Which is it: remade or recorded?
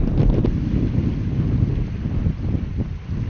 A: recorded